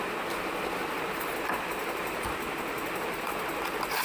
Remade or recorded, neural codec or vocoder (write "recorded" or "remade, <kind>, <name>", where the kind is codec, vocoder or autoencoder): recorded